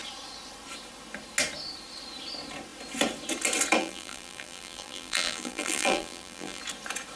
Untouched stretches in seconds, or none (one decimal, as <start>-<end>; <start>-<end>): 0.0-3.8; 6.6-7.2